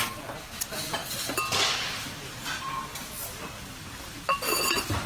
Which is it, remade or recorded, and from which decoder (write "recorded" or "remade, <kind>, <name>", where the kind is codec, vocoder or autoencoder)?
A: recorded